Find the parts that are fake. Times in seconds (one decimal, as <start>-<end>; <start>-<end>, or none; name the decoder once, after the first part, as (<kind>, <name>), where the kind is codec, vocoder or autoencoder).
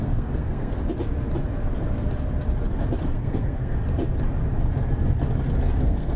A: 0.0-0.8 (codec, SNAC); 3.0-3.8; 5.8-6.2